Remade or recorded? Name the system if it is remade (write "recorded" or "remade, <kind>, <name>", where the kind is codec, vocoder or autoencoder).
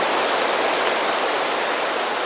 recorded